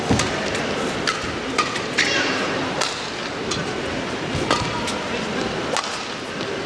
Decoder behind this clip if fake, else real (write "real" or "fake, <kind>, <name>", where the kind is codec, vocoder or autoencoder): real